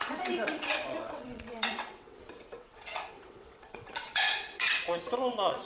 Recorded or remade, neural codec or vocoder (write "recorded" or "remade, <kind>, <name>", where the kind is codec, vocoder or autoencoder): remade, vocoder, WaveNeXt